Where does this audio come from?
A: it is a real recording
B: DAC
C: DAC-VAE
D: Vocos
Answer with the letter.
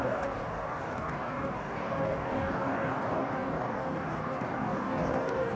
B